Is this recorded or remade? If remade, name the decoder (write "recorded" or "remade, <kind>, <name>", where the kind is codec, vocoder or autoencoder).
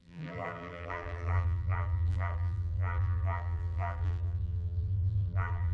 remade, vocoder, BigVGAN v2